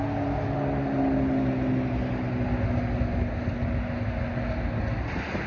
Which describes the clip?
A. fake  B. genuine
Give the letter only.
B